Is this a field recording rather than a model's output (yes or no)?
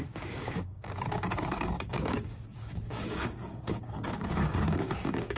no